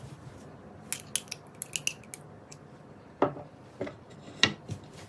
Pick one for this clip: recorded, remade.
recorded